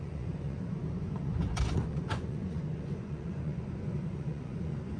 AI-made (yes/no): yes